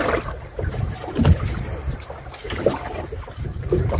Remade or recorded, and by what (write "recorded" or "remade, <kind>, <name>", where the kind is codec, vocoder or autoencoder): recorded